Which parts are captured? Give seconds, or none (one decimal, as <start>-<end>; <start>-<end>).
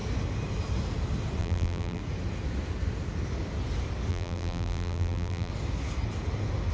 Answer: 0.0-1.4; 2.0-4.1; 5.5-6.7